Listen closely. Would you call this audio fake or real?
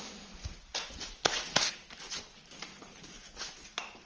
real